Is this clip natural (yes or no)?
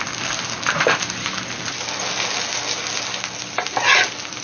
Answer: yes